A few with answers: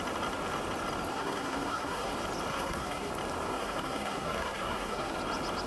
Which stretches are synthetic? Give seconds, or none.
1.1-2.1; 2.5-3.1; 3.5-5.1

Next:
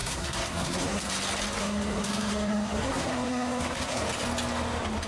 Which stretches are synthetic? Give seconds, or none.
0.0-1.1; 1.6-4.0

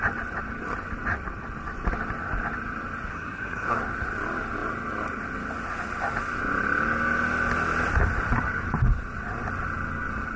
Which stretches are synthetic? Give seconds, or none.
3.1-3.8

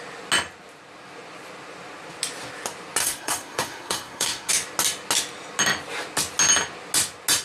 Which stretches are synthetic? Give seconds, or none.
3.0-4.5

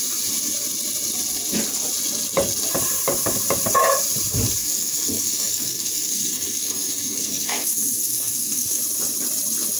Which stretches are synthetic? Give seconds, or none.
4.6-8.8

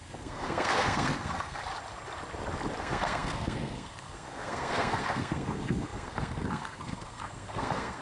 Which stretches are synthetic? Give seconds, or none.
0.0-1.6; 2.8-8.0

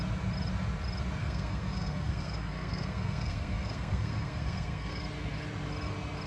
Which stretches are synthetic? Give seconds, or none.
1.2-5.0